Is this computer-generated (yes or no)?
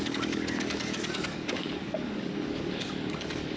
yes